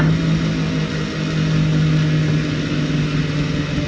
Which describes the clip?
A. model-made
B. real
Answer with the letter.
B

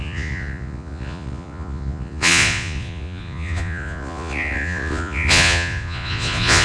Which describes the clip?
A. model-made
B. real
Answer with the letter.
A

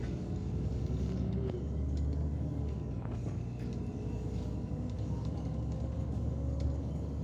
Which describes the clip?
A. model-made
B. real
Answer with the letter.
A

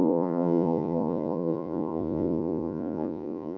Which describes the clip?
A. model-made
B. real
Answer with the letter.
A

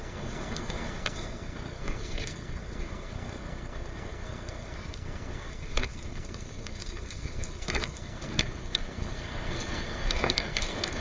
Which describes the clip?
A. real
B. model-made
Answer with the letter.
B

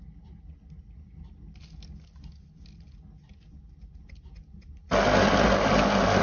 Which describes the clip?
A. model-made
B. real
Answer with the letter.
B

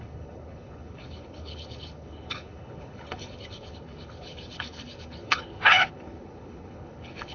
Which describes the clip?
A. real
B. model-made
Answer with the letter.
B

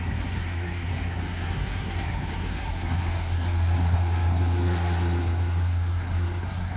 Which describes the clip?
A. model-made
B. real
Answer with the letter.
A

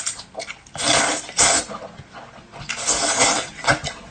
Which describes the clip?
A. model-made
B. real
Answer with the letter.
B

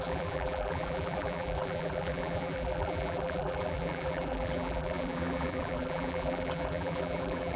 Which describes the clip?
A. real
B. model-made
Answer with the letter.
B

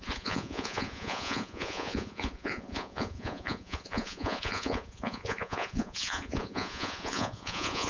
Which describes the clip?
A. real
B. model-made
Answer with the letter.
B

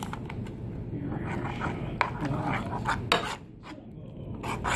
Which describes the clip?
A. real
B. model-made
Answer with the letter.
A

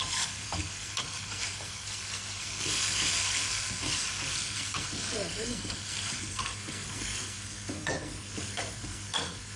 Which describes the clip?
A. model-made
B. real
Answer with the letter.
A